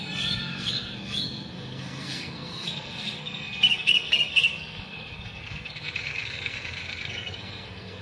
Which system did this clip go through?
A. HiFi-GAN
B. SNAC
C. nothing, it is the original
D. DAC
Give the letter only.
B